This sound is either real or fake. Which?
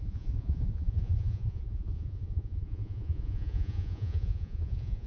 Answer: fake